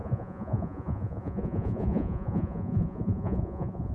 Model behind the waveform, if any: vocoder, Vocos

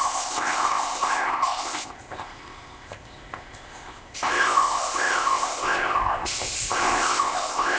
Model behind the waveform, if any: codec, ZipCodec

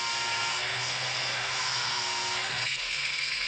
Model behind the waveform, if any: codec, SNAC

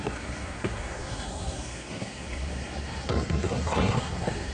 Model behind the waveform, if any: codec, SNAC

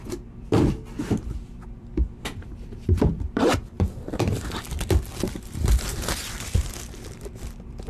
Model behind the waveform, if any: vocoder, BigVGAN v2